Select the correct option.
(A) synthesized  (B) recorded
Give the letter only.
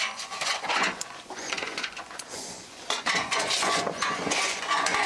A